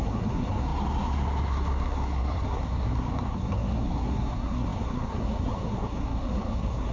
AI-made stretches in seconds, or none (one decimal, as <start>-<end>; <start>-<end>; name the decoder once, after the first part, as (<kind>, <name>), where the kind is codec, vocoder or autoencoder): 0.0-6.9 (codec, SNAC)